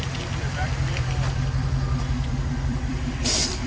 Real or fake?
fake